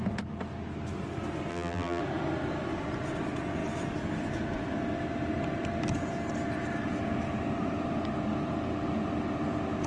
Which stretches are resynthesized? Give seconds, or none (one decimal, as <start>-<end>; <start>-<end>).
1.5-2.0